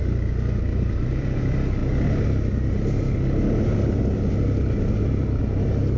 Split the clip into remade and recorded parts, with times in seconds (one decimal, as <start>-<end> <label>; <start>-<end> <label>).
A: 0.0-0.7 recorded; 0.7-1.4 remade; 1.4-6.0 recorded